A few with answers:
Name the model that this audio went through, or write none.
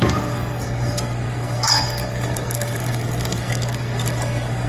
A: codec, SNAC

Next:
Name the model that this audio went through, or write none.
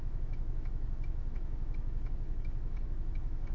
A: autoencoder, DAC-VAE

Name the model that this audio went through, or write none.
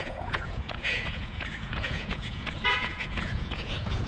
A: vocoder, Vocos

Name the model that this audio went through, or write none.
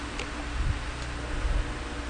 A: none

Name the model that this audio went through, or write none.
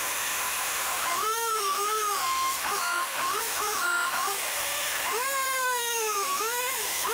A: autoencoder, DAC-VAE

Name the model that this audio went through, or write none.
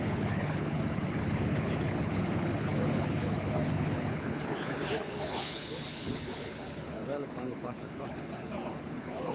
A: codec, HILCodec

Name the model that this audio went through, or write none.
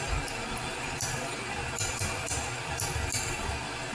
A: none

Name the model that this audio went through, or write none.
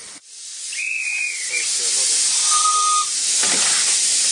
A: none